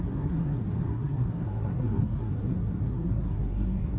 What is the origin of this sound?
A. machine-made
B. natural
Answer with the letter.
A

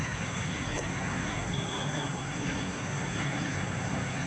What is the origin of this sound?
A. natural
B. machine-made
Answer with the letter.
B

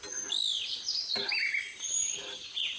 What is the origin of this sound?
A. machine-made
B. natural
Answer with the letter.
B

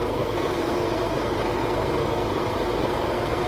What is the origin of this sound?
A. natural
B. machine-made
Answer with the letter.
B